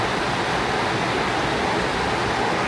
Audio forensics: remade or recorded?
recorded